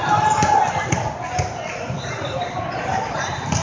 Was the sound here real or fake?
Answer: real